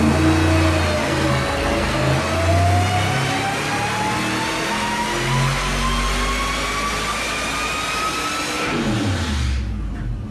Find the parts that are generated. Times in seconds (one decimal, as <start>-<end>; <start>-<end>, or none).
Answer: 1.0-2.2